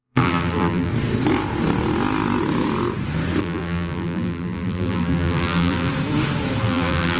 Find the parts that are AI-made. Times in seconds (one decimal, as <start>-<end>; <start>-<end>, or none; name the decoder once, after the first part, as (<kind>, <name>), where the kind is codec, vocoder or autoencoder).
0.0-0.9 (vocoder, BigVGAN v2); 3.4-5.9; 6.6-7.2